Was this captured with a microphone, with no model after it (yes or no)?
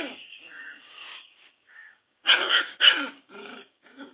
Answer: no